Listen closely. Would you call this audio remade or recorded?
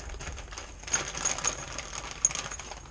recorded